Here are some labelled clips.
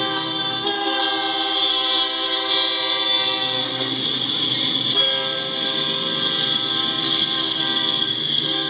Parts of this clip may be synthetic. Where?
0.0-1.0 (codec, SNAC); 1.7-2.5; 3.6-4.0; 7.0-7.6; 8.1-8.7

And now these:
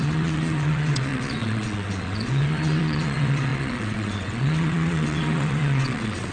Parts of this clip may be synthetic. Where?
0.0-6.3 (vocoder, WaveNeXt)

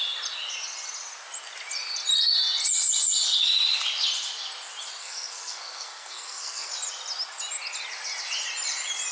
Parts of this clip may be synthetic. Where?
5.0-6.7 (codec, SNAC)

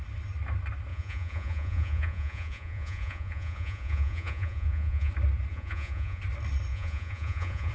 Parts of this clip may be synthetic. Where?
0.9-5.1 (vocoder, Vocos); 5.5-6.2; 6.7-7.7

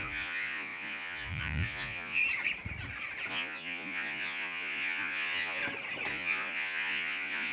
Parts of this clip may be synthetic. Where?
0.0-2.2 (vocoder, Vocos); 3.3-5.6; 6.1-7.5